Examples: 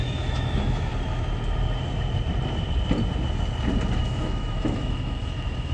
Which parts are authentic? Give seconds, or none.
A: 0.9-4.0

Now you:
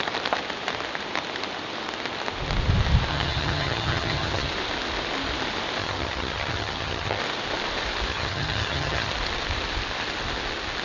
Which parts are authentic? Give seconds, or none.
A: 0.0-3.1; 4.5-5.8; 7.2-8.1; 9.1-10.8

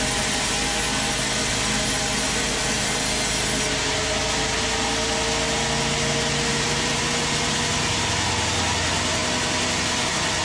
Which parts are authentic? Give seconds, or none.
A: 0.0-6.5; 7.0-10.4